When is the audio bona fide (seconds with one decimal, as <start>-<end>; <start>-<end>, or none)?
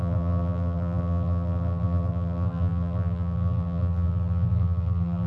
none